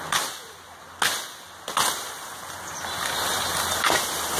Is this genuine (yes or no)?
yes